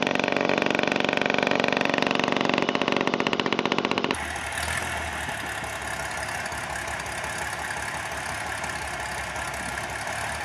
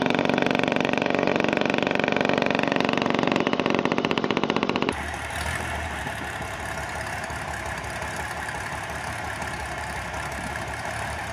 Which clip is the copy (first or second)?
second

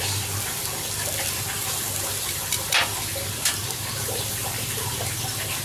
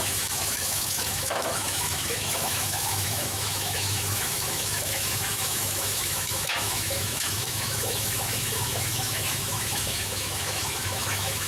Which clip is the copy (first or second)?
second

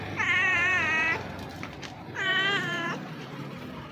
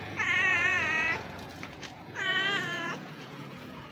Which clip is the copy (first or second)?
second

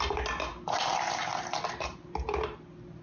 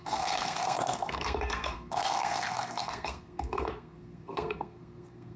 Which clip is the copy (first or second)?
second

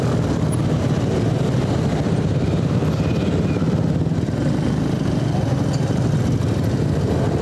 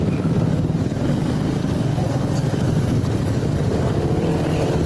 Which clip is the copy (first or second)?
second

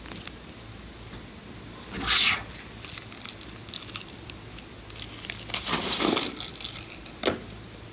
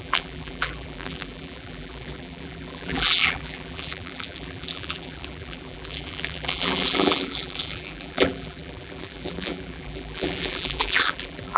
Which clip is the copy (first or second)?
second